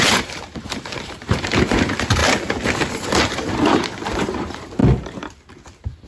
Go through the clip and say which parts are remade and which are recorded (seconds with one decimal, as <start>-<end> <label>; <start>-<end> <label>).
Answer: 0.0-2.2 remade; 2.2-2.9 recorded; 2.9-4.8 remade; 4.8-6.1 recorded